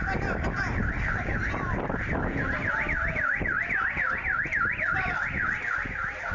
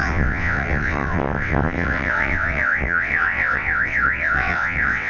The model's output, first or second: second